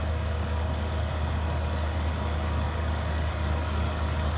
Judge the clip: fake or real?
fake